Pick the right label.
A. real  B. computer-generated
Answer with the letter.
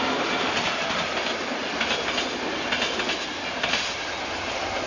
A